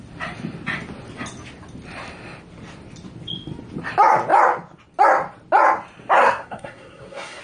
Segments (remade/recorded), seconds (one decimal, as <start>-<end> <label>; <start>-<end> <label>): 0.0-6.2 recorded; 6.2-7.4 remade